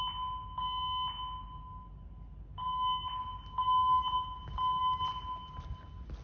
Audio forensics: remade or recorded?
recorded